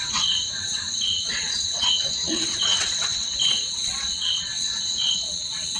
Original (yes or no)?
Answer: no